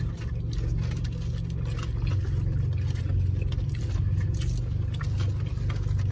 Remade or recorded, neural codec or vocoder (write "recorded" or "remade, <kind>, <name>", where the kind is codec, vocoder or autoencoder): recorded